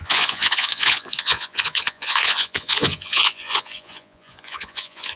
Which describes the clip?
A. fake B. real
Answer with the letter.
A